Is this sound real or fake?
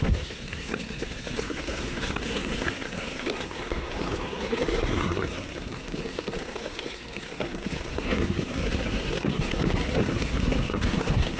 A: fake